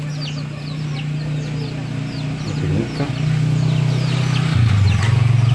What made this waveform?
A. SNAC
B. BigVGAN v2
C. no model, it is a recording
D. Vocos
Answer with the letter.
C